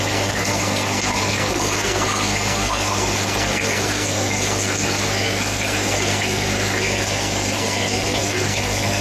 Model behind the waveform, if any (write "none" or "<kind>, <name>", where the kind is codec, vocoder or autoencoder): codec, SNAC